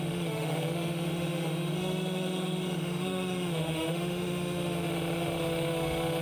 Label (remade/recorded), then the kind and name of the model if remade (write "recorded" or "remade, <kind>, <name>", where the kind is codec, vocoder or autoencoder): remade, autoencoder, DAC-VAE